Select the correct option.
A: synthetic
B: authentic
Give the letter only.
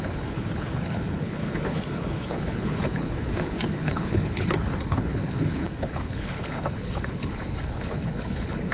A